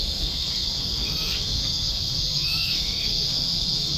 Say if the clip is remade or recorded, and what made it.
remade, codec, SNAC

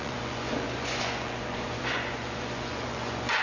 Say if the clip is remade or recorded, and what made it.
remade, vocoder, Vocos